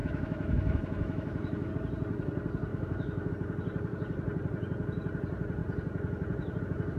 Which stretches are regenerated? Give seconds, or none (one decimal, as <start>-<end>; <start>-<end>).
0.0-1.7; 2.7-3.3